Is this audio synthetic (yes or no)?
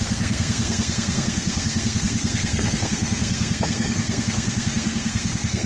yes